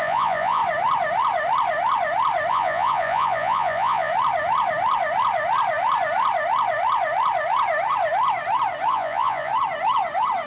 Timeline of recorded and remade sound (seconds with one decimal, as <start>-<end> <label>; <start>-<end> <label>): 0.0-0.6 remade; 0.6-2.5 recorded; 2.5-4.1 remade; 4.1-8.9 recorded; 8.9-9.5 remade; 9.5-10.5 recorded